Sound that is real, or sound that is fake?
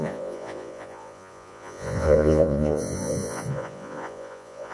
fake